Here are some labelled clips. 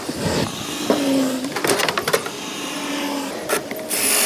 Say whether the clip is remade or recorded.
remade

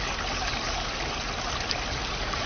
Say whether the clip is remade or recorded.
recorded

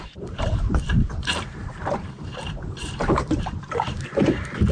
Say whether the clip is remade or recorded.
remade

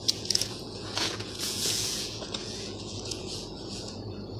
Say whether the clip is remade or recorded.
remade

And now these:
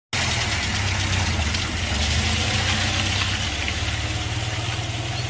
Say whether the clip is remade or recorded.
recorded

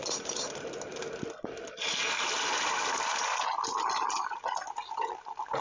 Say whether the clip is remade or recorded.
recorded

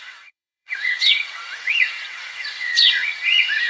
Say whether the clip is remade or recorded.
remade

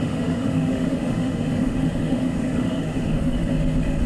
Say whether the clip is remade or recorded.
remade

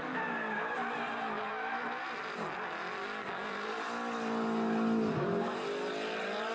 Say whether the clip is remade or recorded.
recorded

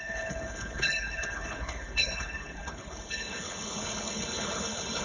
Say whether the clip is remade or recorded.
remade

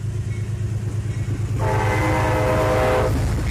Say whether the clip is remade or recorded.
recorded